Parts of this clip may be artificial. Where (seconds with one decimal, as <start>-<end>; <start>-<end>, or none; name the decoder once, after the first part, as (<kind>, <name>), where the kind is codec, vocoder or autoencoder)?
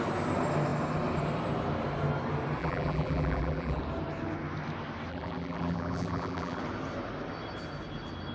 2.6-3.8 (vocoder, BigVGAN v2); 5.1-6.6